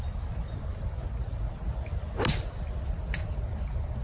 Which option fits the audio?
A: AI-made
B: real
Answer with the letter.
B